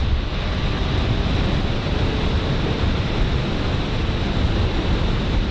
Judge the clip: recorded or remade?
remade